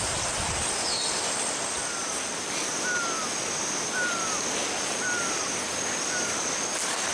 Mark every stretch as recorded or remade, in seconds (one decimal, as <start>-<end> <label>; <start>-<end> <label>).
0.0-7.1 recorded